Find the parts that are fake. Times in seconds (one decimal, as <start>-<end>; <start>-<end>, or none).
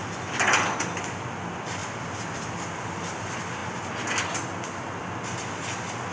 none